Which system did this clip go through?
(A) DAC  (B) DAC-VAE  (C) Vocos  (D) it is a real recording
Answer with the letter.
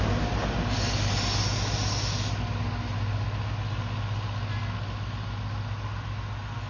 D